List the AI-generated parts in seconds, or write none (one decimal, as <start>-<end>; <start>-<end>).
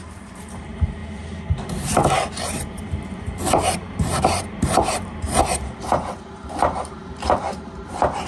0.0-8.3